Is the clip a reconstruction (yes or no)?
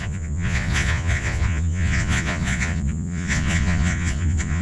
yes